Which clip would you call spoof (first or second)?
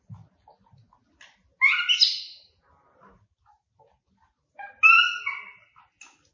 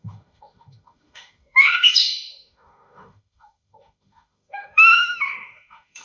second